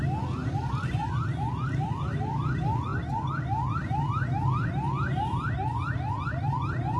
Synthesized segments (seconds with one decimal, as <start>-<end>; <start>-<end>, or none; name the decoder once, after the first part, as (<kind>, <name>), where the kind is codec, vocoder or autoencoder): 0.4-2.1 (vocoder, BigVGAN v2)